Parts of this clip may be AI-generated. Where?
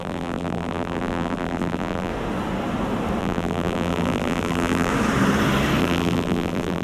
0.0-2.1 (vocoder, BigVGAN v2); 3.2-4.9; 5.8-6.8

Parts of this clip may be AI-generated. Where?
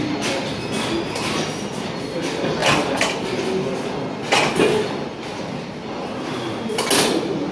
none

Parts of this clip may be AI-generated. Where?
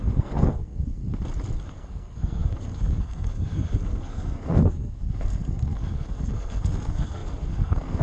0.0-1.0 (codec, SNAC); 1.7-8.0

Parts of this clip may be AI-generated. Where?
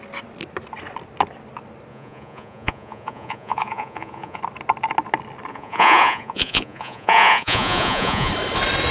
1.9-4.4 (vocoder, Vocos); 5.5-8.3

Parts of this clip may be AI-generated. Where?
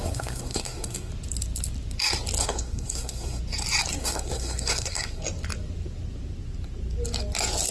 0.0-1.1 (codec, SNAC); 2.4-3.4; 4.0-5.2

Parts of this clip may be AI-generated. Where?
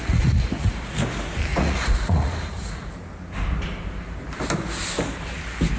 0.0-0.9 (vocoder, Vocos); 1.5-2.9